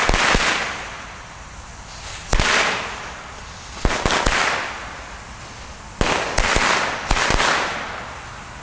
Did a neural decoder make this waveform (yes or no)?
no